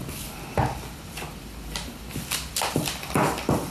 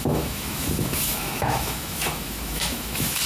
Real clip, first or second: first